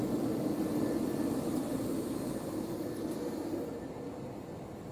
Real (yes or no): yes